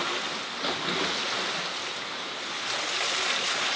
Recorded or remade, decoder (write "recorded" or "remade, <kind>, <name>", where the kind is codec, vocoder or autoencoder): recorded